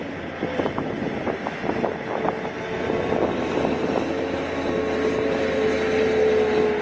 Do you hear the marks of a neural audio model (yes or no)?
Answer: no